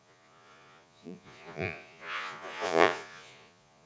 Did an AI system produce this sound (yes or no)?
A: yes